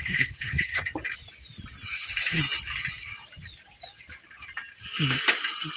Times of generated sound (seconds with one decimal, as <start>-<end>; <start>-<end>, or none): 0.0-0.8; 1.9-2.4